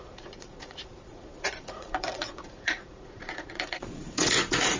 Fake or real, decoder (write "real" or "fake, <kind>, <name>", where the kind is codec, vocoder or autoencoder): fake, vocoder, Vocos